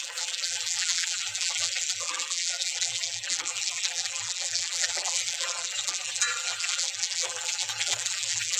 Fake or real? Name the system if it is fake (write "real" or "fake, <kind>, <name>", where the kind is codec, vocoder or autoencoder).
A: fake, vocoder, BigVGAN v2